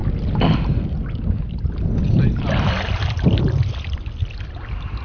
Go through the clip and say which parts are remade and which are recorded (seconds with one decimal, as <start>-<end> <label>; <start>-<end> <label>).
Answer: 0.0-5.0 recorded